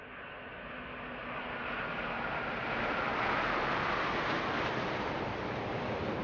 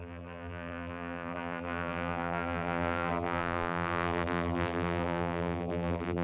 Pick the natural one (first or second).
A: first